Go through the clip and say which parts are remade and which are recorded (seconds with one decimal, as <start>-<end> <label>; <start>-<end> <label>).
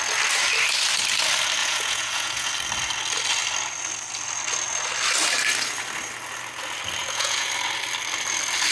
0.0-1.6 recorded; 1.6-2.5 remade; 2.5-7.0 recorded; 7.0-7.5 remade; 7.5-8.7 recorded